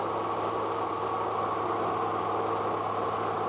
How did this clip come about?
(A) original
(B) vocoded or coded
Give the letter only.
A